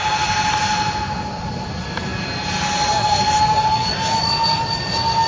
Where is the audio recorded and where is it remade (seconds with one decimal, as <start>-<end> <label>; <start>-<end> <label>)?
0.0-5.3 recorded